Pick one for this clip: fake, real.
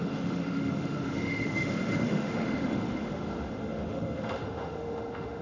fake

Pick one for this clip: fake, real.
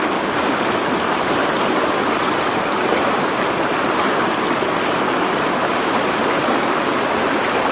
real